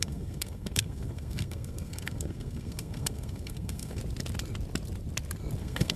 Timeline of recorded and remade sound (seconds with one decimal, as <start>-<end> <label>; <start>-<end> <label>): 0.0-4.0 remade; 4.0-5.6 recorded; 5.6-6.0 remade